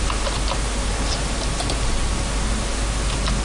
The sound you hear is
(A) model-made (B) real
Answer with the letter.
B